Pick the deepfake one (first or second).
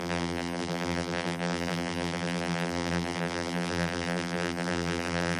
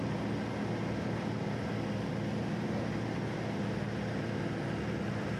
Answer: first